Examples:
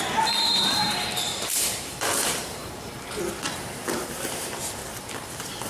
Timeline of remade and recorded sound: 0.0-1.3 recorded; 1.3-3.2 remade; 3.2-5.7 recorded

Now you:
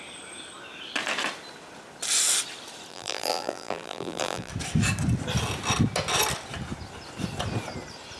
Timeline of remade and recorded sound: 0.0-2.9 recorded; 2.9-4.5 remade; 4.5-8.2 recorded

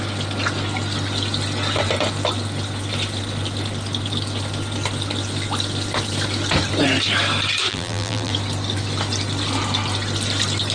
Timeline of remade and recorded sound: 0.0-7.7 recorded; 7.7-8.3 remade; 8.3-10.7 recorded

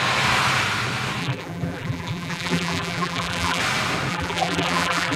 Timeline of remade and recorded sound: 0.0-1.2 recorded; 1.2-3.6 remade; 3.6-4.1 recorded; 4.1-5.2 remade

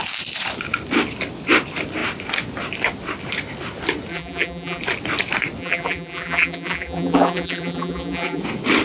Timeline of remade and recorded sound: 0.0-4.1 recorded; 4.1-4.8 remade; 4.8-5.6 recorded; 5.6-8.4 remade; 8.4-8.8 recorded

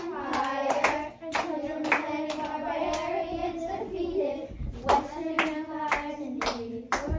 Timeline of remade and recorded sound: 0.0-3.4 recorded; 3.4-4.5 remade; 4.5-7.2 recorded